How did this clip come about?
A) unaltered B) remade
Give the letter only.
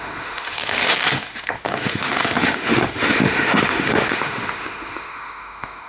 B